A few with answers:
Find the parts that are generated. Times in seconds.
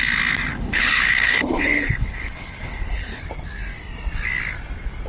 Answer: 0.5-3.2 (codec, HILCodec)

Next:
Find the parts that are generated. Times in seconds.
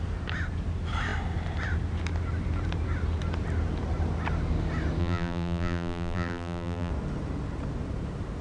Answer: 5.0-6.9 (vocoder, BigVGAN v2)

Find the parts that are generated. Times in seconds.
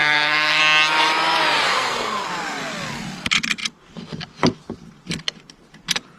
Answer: 0.0-0.6 (codec, SNAC); 1.7-2.3